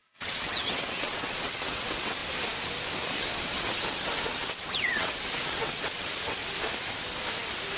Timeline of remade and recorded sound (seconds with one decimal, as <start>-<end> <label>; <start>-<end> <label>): 0.0-2.2 remade; 2.2-3.9 recorded; 3.9-6.4 remade; 6.4-7.8 recorded